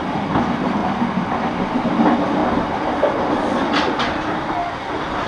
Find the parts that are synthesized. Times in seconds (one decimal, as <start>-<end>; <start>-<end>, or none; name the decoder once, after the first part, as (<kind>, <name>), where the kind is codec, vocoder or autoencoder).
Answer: 0.0-0.8 (vocoder, BigVGAN v2); 1.4-2.4; 3.2-4.6